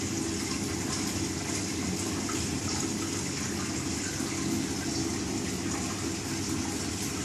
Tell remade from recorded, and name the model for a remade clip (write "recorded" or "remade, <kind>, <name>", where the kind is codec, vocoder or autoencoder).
recorded